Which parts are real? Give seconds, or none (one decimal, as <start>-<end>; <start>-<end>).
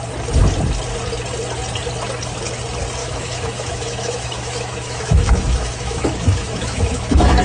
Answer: 0.0-3.0